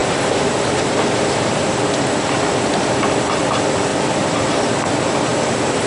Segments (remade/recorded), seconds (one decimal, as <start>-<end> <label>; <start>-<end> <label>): 0.0-3.5 remade; 3.5-3.9 recorded; 3.9-4.7 remade; 4.7-5.9 recorded